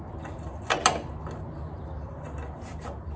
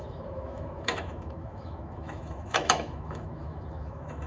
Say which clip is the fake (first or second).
second